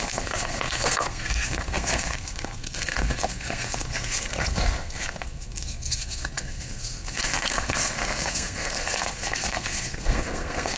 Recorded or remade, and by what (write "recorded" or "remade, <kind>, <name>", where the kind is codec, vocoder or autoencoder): remade, codec, SNAC